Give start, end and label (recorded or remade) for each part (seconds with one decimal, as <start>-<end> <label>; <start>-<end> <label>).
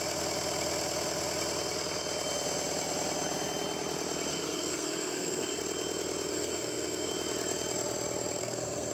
0.0-4.3 recorded; 4.3-5.6 remade; 5.6-6.3 recorded; 6.3-7.1 remade; 7.1-8.4 recorded; 8.4-8.9 remade